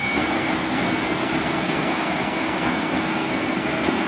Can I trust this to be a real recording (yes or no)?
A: no